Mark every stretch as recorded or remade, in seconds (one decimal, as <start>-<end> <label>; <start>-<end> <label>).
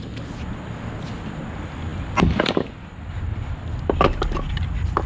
0.0-5.1 recorded